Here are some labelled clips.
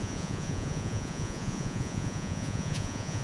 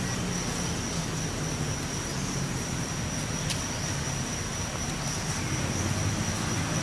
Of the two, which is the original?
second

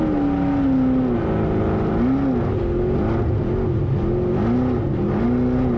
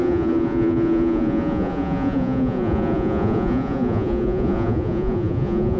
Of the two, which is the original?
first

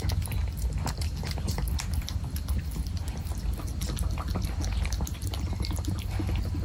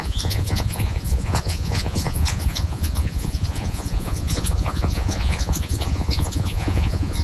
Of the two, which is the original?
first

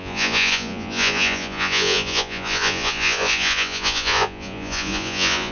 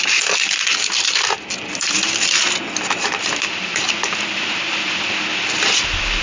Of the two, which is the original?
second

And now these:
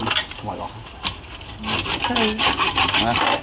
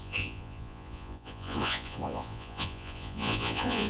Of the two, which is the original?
first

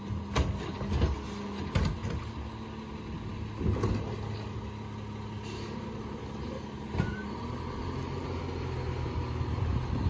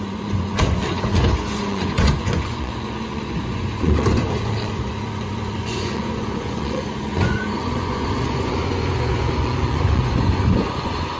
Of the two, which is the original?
first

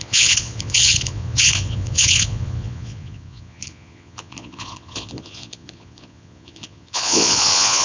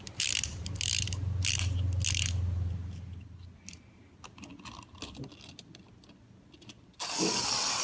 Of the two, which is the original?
second